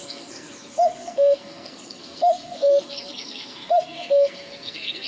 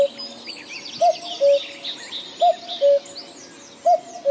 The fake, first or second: first